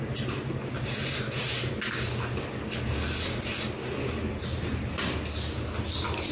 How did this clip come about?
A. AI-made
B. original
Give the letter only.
B